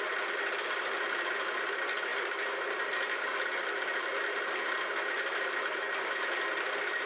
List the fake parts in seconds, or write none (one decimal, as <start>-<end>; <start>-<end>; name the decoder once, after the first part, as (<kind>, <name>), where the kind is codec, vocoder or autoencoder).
none